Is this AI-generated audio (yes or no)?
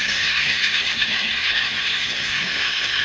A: yes